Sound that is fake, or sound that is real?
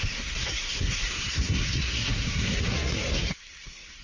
fake